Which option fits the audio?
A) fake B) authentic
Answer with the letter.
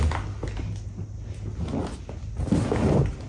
B